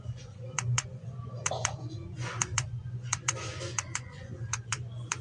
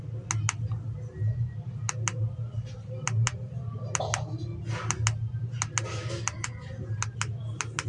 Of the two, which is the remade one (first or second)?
first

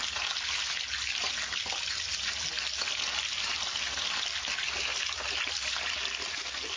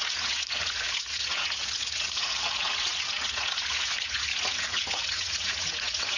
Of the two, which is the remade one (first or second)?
second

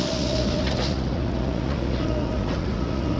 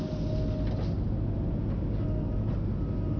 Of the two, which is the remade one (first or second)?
first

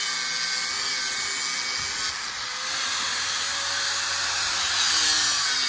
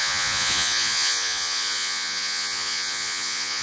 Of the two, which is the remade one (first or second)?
second